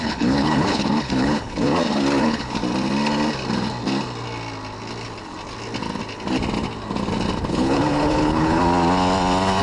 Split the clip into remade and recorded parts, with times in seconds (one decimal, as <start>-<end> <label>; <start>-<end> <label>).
0.0-1.7 remade; 1.7-2.2 recorded; 2.2-2.6 remade; 2.6-7.5 recorded; 7.5-8.6 remade; 8.6-9.6 recorded